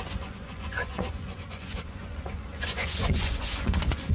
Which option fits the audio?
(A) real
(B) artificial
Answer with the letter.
B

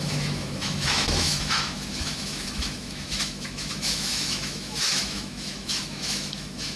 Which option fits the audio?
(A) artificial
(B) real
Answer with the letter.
A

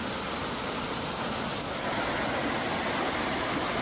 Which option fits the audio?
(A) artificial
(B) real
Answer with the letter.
B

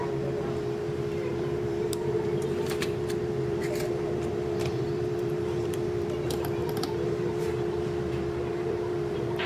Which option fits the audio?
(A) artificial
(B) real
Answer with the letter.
A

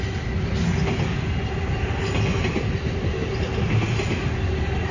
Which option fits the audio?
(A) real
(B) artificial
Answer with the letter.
A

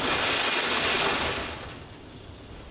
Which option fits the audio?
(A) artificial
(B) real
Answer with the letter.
B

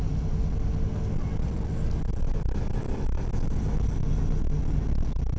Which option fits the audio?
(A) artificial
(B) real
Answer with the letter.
B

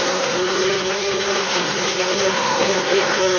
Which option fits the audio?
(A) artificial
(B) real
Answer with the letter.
A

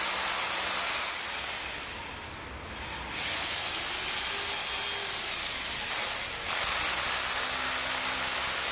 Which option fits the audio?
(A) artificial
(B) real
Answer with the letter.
B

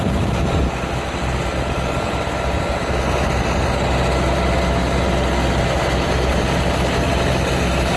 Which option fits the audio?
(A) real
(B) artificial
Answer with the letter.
A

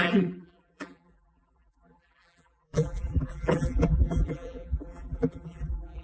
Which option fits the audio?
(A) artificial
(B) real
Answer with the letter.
A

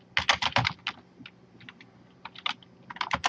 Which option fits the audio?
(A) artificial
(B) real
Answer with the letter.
B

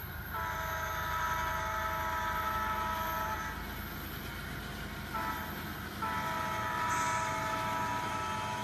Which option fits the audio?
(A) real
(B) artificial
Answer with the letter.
A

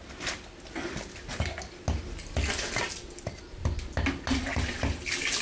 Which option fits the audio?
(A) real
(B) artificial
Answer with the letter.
A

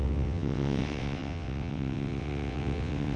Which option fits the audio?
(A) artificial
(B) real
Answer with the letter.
A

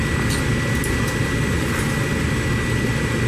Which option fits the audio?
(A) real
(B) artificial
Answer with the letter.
A